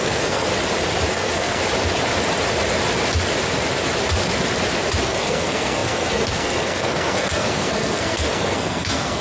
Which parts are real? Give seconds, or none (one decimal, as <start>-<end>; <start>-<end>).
0.5-1.1; 1.6-5.0